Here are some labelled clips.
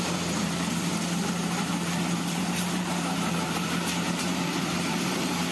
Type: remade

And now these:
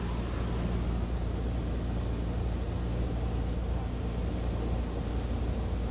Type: recorded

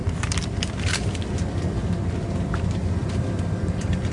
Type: remade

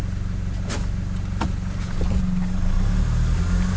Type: recorded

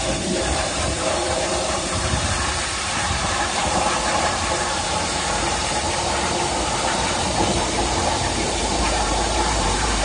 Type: remade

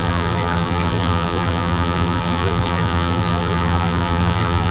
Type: remade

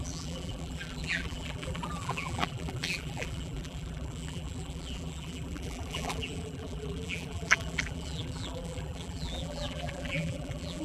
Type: remade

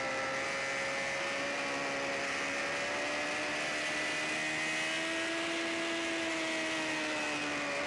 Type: recorded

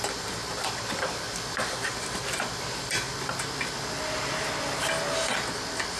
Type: remade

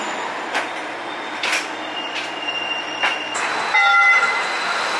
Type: recorded